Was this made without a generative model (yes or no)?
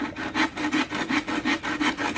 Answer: yes